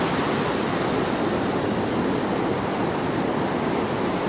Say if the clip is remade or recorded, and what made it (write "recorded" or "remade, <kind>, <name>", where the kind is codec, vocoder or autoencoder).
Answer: recorded